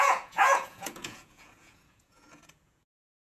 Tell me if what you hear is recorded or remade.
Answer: remade